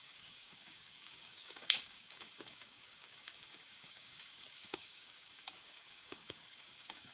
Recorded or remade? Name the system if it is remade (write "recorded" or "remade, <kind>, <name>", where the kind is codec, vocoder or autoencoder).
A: remade, codec, DAC